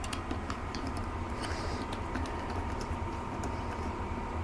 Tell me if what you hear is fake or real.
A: fake